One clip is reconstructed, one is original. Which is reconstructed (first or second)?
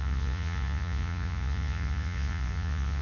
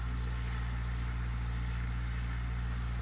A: first